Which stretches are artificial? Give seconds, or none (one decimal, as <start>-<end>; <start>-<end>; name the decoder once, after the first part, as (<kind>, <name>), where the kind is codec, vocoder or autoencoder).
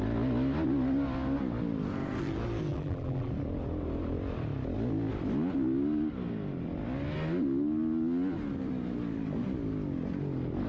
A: 2.7-3.3 (vocoder, BigVGAN v2)